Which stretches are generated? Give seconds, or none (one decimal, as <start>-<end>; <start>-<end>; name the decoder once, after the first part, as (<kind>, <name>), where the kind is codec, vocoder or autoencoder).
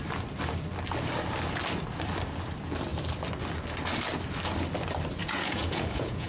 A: 5.2-6.3 (vocoder, Vocos)